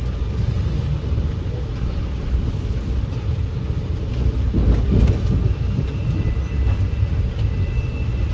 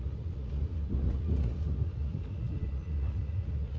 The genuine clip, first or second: first